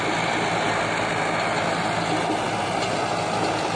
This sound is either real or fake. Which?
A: real